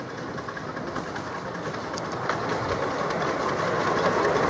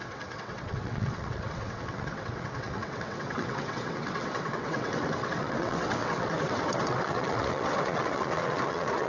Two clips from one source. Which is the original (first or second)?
first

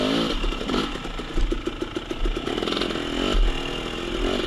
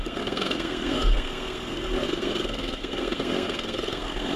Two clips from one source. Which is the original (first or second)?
first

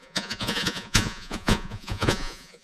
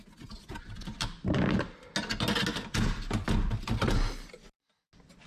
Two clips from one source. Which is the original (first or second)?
second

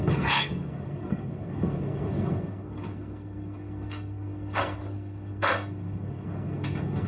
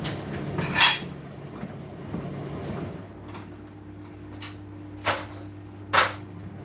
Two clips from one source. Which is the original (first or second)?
second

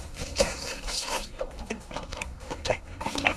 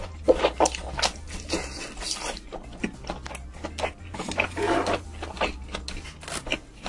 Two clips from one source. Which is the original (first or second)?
second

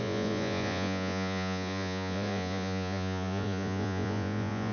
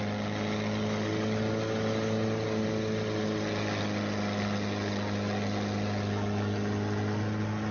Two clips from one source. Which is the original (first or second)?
second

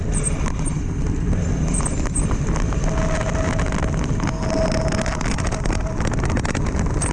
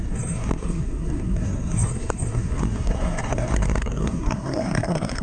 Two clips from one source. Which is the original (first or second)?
first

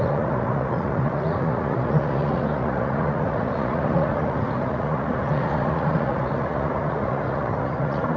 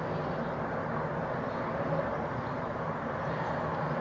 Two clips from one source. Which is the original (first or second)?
second